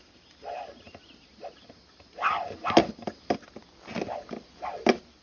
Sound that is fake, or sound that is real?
real